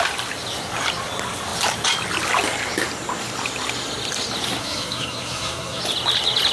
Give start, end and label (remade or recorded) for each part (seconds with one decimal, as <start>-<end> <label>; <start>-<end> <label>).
0.0-4.6 recorded; 4.6-5.8 remade; 5.8-6.5 recorded